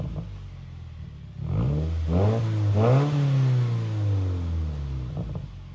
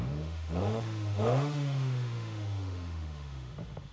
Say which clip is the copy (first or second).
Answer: second